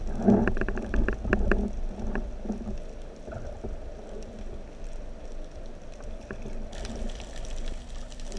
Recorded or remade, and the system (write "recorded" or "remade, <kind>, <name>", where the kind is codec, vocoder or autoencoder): recorded